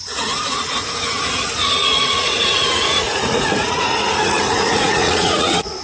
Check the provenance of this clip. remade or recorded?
remade